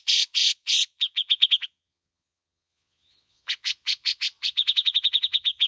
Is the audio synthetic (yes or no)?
yes